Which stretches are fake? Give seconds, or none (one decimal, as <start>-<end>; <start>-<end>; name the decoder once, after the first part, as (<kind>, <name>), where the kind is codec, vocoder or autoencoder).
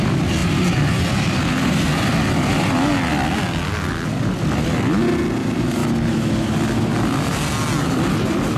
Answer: none